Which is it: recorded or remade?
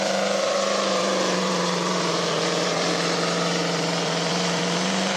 remade